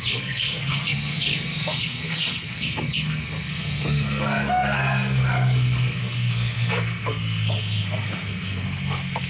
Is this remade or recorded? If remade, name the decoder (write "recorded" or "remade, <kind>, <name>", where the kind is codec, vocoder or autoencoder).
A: remade, codec, SNAC